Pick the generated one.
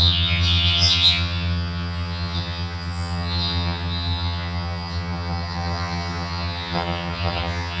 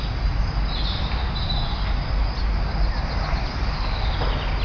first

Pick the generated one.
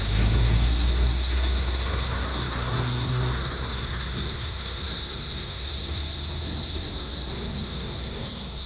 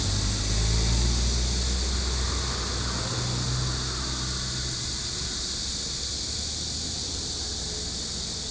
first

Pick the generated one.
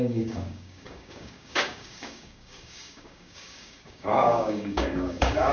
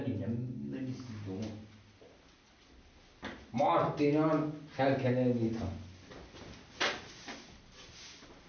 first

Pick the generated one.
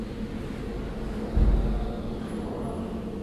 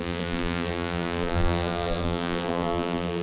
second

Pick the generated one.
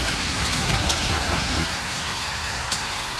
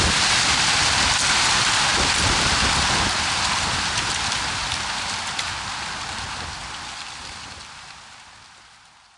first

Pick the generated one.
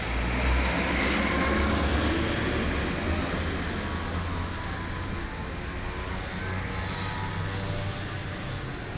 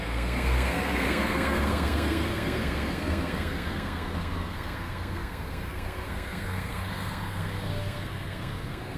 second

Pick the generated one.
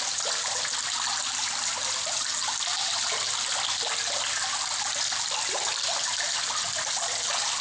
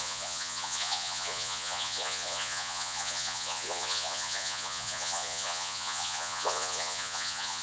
second